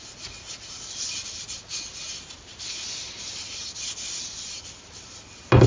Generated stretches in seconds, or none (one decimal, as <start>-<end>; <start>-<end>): none